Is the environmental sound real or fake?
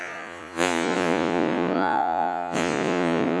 fake